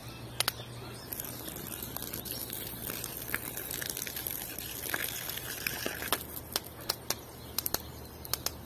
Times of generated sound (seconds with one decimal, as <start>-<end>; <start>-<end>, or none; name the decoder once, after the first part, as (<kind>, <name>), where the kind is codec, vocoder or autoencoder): none